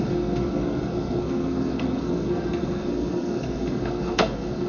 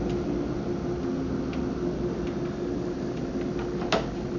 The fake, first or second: first